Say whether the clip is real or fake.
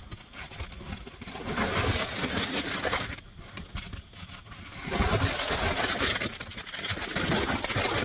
real